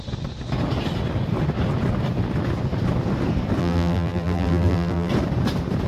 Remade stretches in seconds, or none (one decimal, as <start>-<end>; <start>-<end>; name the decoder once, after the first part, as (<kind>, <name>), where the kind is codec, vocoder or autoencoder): 3.6-5.1 (vocoder, BigVGAN v2)